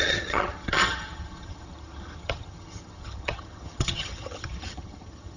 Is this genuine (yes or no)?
no